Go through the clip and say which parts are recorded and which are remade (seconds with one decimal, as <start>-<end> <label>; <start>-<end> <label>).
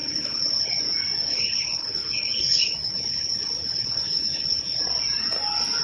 0.0-0.8 remade; 0.8-1.3 recorded; 1.3-4.8 remade; 4.8-5.8 recorded